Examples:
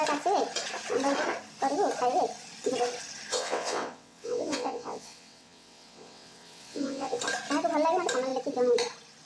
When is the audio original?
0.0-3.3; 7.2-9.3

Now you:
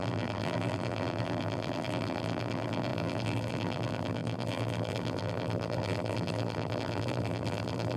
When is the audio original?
none

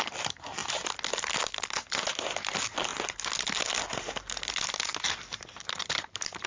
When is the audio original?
0.0-6.5

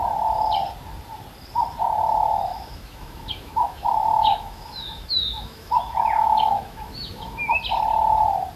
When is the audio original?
0.0-2.5; 7.5-8.6

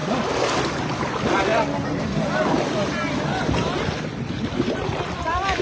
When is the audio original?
1.5-4.1